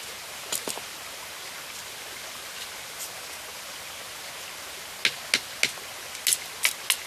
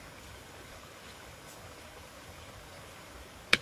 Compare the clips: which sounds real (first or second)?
first